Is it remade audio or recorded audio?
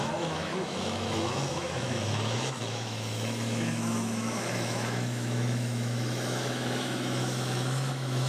remade